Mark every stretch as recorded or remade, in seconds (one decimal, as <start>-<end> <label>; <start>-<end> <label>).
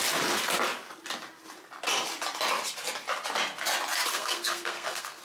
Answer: 0.0-4.1 recorded; 4.1-5.2 remade